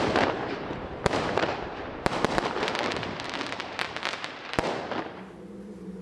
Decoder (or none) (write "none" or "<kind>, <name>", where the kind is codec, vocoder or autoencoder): vocoder, BigVGAN v2